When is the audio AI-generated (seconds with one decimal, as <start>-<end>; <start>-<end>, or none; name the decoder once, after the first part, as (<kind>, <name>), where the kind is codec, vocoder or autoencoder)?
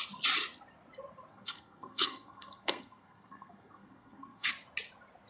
1.3-4.5 (codec, SNAC)